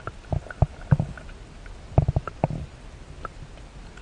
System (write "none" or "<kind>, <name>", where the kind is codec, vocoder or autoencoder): none